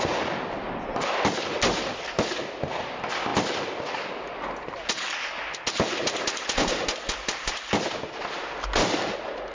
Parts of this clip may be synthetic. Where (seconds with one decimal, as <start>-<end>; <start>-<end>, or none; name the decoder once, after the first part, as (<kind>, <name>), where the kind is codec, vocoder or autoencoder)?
none